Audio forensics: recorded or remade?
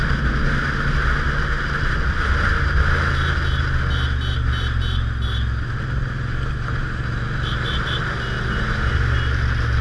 recorded